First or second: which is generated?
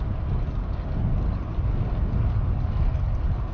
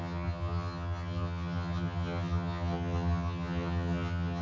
second